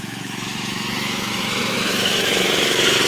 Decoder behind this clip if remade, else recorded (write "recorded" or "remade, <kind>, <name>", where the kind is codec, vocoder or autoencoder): remade, autoencoder, DAC-VAE